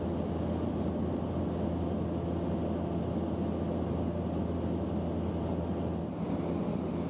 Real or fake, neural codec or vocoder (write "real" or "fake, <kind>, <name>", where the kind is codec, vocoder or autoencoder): real